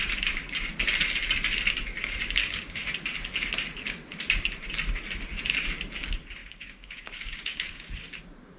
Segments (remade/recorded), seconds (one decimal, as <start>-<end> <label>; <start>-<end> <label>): 0.0-2.4 recorded; 2.4-2.9 remade; 2.9-6.4 recorded; 6.4-8.2 remade; 8.2-8.6 recorded